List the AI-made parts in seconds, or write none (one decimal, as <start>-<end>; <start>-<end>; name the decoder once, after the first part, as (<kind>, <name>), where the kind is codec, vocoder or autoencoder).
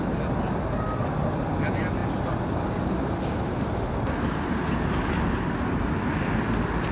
none